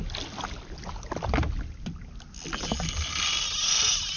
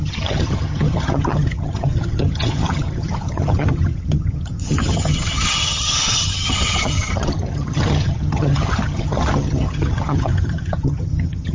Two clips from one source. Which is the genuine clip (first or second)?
first